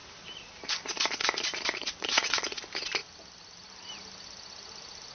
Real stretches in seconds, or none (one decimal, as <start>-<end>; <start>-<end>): 0.0-1.8; 2.6-5.1